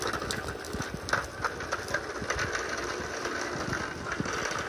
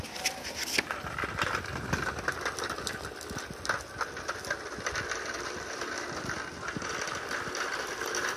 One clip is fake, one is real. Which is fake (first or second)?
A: second